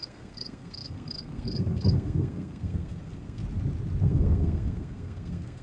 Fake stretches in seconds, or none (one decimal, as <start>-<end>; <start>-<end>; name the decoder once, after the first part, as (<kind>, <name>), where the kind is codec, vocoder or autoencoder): 0.0-3.4 (codec, SNAC); 4.0-5.6